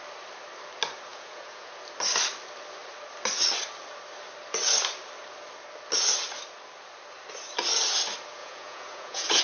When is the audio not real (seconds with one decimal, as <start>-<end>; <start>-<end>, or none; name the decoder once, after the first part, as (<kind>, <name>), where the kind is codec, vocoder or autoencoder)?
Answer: 1.1-1.7 (vocoder, Vocos); 8.4-9.4